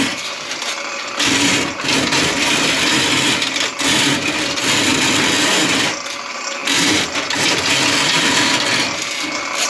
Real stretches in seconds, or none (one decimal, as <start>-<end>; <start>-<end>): 0.0-9.7